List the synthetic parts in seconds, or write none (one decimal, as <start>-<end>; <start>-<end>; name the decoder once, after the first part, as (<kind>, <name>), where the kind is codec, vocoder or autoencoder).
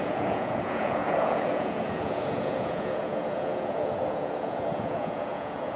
0.0-5.8 (vocoder, Vocos)